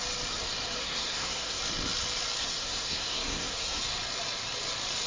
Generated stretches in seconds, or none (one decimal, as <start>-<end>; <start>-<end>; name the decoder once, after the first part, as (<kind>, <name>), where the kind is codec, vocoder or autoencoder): 0.8-1.6 (codec, SNAC); 2.4-3.8